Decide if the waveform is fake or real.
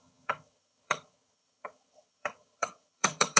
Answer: fake